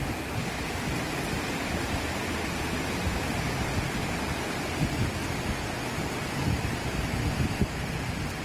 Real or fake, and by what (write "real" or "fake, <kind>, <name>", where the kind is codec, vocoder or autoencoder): real